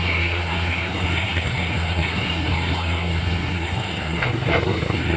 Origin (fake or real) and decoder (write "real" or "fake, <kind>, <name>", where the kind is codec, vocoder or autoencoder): fake, codec, SNAC